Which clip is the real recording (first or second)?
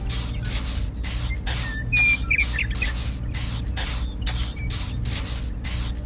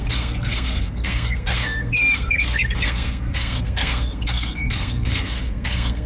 first